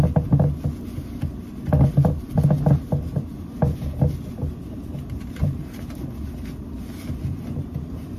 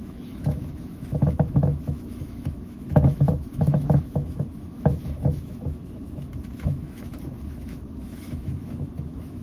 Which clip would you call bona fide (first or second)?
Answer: first